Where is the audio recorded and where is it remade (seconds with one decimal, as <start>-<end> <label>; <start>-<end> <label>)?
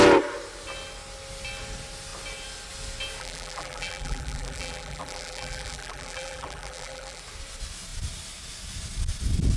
0.0-3.2 recorded; 3.2-7.2 remade; 7.2-9.6 recorded